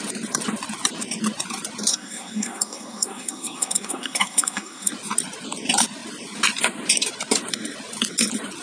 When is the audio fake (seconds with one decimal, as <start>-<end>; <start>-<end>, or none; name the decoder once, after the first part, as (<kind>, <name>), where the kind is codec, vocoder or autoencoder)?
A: 1.9-4.9 (codec, SNAC)